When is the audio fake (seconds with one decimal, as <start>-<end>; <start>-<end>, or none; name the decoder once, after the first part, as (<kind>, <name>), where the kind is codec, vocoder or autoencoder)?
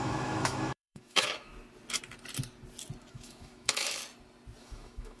0.0-1.5 (autoencoder, DAC-VAE); 3.1-4.0; 4.6-5.2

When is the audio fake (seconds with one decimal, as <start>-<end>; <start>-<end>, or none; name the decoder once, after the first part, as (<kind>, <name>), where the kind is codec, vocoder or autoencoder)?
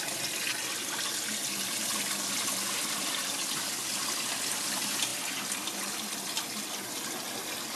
none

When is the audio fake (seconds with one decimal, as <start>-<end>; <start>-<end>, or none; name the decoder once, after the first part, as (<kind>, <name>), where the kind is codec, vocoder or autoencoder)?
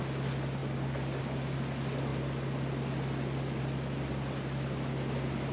none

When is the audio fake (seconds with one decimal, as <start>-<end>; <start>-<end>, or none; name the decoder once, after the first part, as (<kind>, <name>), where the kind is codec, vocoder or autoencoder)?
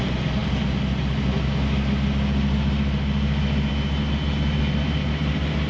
none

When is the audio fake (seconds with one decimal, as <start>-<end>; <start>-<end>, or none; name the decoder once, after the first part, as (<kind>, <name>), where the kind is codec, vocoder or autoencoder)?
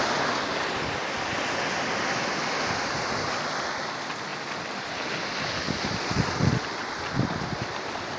none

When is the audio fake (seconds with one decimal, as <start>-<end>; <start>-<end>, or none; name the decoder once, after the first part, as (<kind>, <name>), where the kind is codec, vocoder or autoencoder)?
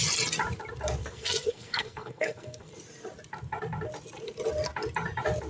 1.0-2.7 (codec, SNAC)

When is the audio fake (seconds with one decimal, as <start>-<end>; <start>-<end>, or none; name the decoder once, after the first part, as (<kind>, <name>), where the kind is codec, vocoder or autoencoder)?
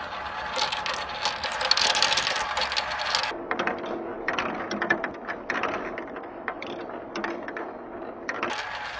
none